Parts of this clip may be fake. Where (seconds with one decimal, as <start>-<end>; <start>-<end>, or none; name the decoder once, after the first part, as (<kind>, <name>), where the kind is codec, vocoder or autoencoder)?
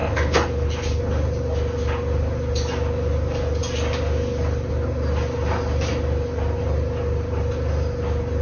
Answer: 0.0-1.0 (codec, HILCodec)